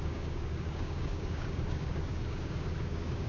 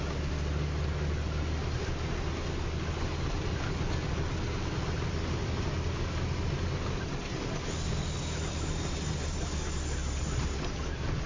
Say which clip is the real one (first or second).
second